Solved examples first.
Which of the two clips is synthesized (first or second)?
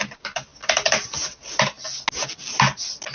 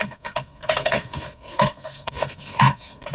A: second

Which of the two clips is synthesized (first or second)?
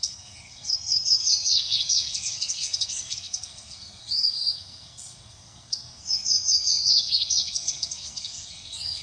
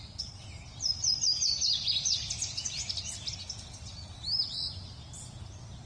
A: first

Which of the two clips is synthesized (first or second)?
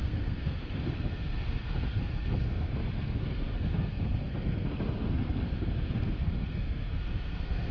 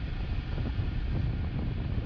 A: first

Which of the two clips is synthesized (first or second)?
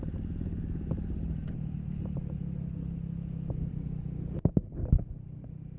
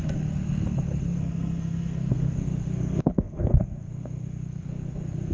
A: second